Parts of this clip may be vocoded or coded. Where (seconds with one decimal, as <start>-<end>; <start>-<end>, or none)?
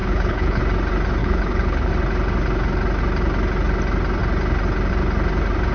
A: 0.0-0.6; 1.2-1.9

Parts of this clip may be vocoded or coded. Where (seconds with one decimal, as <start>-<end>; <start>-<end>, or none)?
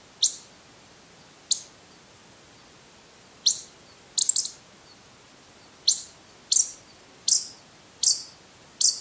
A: none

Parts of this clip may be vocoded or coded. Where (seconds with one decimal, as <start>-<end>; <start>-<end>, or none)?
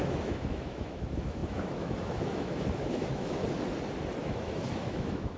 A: 0.0-3.4; 4.2-5.4